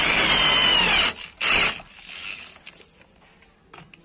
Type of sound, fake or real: real